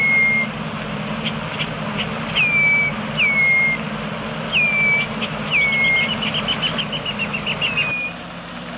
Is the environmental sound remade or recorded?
recorded